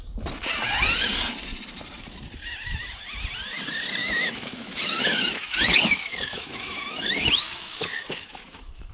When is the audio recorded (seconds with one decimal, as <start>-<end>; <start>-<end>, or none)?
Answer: 0.0-4.0